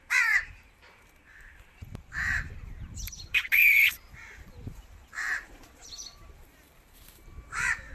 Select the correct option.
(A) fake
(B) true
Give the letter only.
A